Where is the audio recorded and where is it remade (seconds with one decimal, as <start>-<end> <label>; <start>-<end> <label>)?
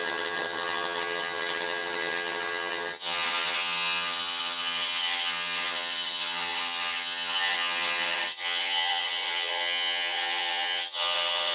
0.0-11.5 remade